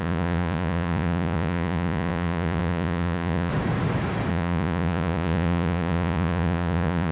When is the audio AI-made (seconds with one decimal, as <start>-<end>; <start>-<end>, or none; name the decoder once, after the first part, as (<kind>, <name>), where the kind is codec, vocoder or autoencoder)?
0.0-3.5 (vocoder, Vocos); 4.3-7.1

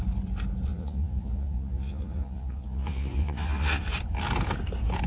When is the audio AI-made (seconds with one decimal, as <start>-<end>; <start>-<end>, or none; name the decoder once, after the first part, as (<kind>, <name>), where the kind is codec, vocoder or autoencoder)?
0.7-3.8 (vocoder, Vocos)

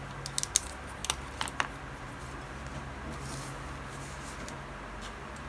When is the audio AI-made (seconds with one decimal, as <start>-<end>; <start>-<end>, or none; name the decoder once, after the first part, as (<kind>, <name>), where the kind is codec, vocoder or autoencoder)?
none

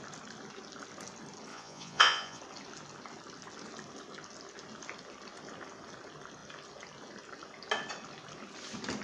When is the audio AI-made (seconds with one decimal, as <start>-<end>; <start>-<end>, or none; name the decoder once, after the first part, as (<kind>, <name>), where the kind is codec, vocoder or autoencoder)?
1.5-2.4 (vocoder, Vocos)

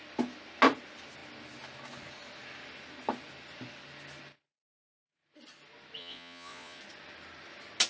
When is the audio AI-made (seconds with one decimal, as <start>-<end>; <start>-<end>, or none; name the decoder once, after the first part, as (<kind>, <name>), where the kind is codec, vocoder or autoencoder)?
6.0-6.8 (vocoder, Vocos)